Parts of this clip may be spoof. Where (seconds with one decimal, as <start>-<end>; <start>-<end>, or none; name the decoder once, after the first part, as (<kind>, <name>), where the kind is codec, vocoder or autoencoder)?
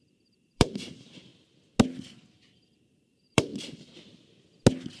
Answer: 0.0-1.3 (vocoder, BigVGAN v2); 2.0-3.5